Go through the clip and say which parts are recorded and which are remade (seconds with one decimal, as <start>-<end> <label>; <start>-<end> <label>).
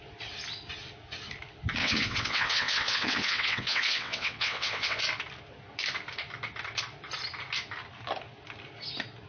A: 0.0-1.8 recorded; 1.8-5.0 remade; 5.0-9.3 recorded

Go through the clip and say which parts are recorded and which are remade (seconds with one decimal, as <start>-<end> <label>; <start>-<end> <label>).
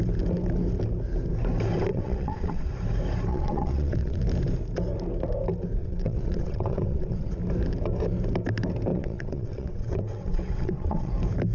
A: 0.0-1.9 recorded; 1.9-2.7 remade; 2.7-3.3 recorded; 3.3-4.2 remade; 4.2-5.8 recorded; 5.8-7.3 remade; 7.3-8.9 recorded; 8.9-11.1 remade; 11.1-11.5 recorded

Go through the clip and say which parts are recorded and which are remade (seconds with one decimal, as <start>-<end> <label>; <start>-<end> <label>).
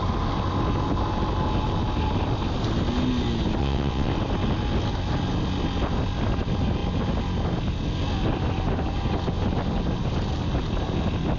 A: 0.0-3.6 recorded; 3.6-4.1 remade; 4.1-11.4 recorded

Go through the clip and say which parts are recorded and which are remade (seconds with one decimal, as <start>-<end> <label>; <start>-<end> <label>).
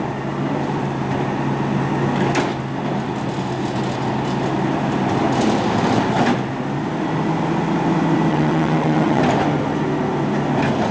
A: 0.0-8.3 recorded; 8.3-9.2 remade; 9.2-10.9 recorded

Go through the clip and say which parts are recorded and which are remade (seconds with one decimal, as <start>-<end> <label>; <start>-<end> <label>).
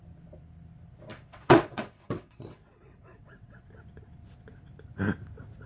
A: 0.0-1.1 recorded; 1.1-3.7 remade; 3.7-5.7 recorded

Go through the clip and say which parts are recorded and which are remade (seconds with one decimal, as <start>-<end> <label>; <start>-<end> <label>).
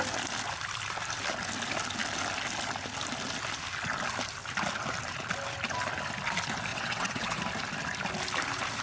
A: 0.0-6.7 recorded; 6.7-7.4 remade; 7.4-8.8 recorded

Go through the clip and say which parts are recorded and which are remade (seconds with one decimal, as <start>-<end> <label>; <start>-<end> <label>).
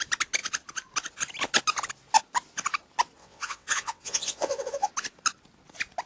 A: 0.0-3.2 recorded; 3.2-4.9 remade; 4.9-6.1 recorded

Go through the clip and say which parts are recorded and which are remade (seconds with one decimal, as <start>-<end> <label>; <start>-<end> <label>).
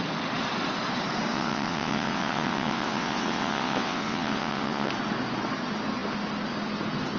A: 0.0-1.3 recorded; 1.3-4.9 remade; 4.9-7.2 recorded